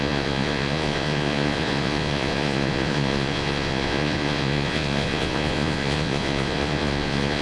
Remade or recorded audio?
remade